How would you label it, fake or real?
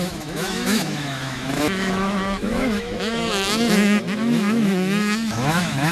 fake